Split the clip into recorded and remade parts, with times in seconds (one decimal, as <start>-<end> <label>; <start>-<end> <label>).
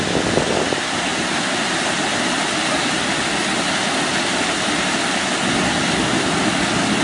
0.0-1.1 recorded; 1.1-1.7 remade; 1.7-2.6 recorded; 2.6-3.7 remade; 3.7-4.3 recorded; 4.3-5.0 remade; 5.0-7.0 recorded